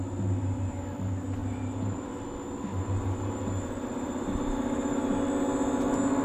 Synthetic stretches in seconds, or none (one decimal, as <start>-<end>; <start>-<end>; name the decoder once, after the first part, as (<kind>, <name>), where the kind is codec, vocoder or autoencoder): 1.4-2.1 (vocoder, BigVGAN v2); 2.7-3.5; 3.9-5.1